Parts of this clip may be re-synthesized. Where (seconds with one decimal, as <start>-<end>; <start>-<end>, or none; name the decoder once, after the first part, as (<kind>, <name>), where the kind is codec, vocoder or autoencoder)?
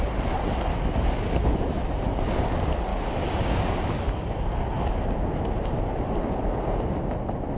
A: 0.7-1.6 (codec, DAC); 2.9-4.4